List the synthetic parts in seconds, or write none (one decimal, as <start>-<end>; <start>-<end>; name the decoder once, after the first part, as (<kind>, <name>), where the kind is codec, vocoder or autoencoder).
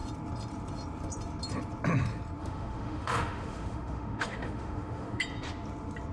2.4-5.2 (autoencoder, DAC-VAE)